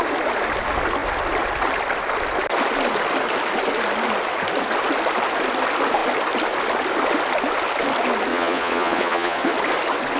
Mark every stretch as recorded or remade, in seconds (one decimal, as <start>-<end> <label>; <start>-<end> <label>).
0.0-8.3 recorded; 8.3-9.5 remade; 9.5-10.2 recorded